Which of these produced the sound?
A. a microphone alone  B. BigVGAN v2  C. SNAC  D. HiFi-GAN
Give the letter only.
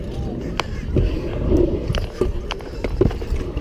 A